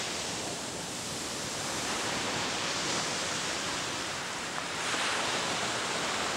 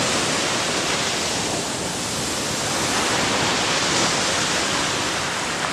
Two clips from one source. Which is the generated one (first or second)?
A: first